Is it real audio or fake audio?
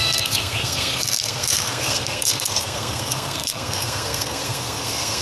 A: fake